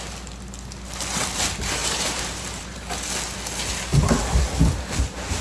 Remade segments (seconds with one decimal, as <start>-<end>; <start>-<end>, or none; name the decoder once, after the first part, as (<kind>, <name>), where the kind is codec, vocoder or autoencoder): 1.8-2.6 (vocoder, BigVGAN v2)